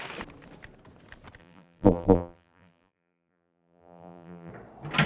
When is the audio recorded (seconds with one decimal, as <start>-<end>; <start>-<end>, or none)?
0.0-1.4; 4.5-5.1

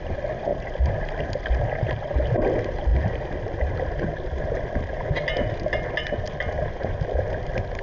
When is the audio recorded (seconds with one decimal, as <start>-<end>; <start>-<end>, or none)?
0.0-7.8